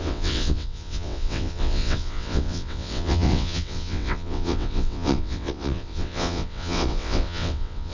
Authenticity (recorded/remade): remade